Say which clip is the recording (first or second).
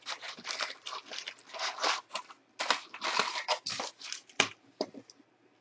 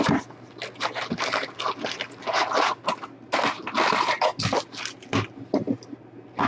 second